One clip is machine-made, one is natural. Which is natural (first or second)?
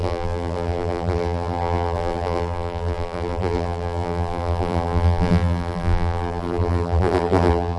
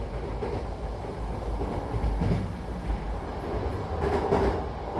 second